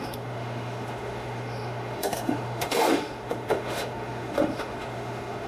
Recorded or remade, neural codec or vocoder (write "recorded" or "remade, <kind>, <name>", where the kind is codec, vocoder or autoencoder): remade, autoencoder, DAC-VAE